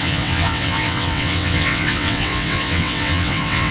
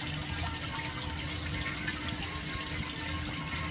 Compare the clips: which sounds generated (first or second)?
first